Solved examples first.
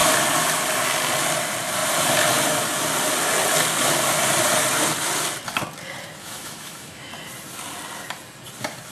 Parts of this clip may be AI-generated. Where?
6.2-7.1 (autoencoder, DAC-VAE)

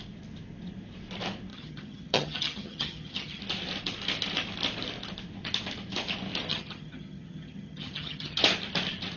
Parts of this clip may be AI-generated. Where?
1.5-3.4 (vocoder, HiFi-GAN); 6.5-8.4